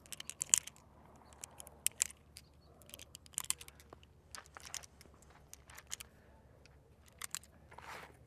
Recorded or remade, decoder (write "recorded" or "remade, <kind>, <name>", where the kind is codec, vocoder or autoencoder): recorded